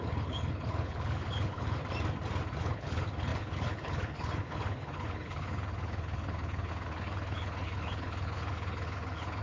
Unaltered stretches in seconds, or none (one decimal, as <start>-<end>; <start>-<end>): 1.8-2.6